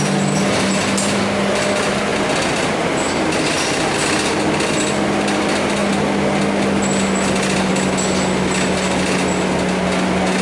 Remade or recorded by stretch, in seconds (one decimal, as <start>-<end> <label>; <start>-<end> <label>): 0.0-10.4 recorded